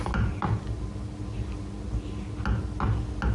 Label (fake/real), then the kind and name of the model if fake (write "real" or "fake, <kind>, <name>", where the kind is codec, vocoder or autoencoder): real